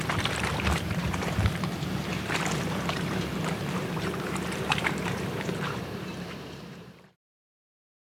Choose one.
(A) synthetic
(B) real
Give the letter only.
A